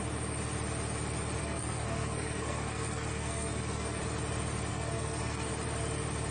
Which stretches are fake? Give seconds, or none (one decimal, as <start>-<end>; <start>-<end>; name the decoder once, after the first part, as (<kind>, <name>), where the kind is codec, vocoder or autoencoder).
1.4-4.0 (codec, SNAC); 4.7-5.5